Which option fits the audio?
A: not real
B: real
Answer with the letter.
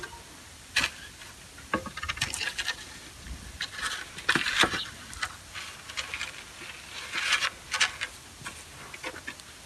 B